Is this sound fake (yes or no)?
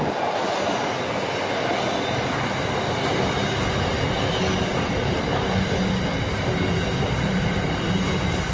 no